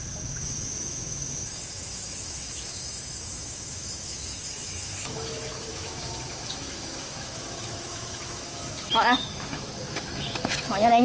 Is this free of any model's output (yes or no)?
no